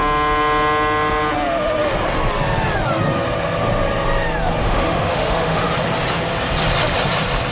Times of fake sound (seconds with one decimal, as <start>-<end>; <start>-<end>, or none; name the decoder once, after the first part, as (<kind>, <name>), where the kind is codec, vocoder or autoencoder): 4.6-5.7 (autoencoder, DAC-VAE)